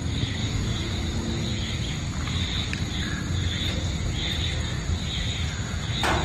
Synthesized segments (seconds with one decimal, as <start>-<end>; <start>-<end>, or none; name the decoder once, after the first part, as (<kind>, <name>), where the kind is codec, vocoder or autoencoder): 0.4-1.0 (vocoder, Vocos)